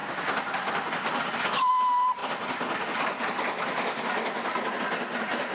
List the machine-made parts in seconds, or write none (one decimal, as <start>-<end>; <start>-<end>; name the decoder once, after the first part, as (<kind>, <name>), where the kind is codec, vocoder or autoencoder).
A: none